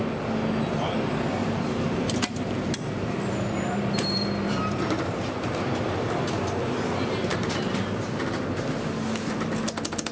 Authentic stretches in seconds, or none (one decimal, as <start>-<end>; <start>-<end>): 0.0-1.4; 6.2-7.3; 8.2-10.1